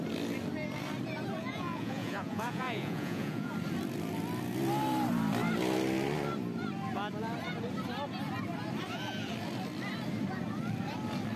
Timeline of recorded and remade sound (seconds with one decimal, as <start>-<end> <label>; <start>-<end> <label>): 0.0-1.4 recorded; 1.4-3.5 remade; 3.5-11.4 recorded